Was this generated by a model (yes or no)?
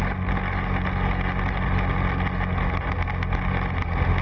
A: no